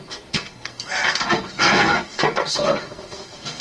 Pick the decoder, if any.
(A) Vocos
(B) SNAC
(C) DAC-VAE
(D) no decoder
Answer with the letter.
B